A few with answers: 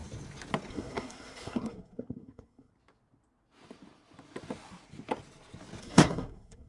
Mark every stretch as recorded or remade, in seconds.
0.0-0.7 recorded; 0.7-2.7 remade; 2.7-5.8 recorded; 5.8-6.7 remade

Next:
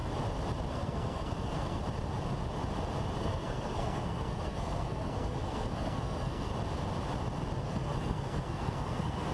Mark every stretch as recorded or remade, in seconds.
0.0-0.7 recorded; 0.7-1.8 remade; 1.8-3.2 recorded; 3.2-6.5 remade; 6.5-7.6 recorded; 7.6-9.3 remade

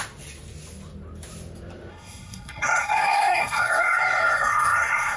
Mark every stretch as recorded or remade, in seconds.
0.0-1.9 recorded; 1.9-5.2 remade

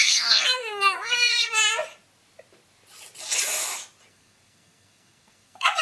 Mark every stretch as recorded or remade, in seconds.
0.0-1.6 remade; 1.6-4.1 recorded; 4.1-5.8 remade

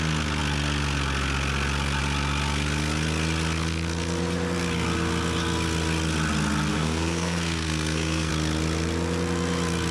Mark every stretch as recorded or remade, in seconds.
0.0-6.7 recorded; 6.7-8.3 remade; 8.3-9.9 recorded

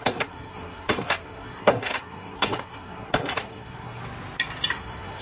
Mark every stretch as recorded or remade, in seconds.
0.0-4.0 remade; 4.0-4.7 recorded; 4.7-5.2 remade

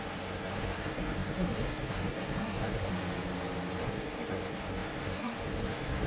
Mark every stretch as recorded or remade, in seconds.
0.0-2.9 remade; 2.9-3.8 recorded; 3.8-6.1 remade